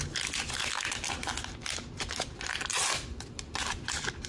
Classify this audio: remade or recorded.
recorded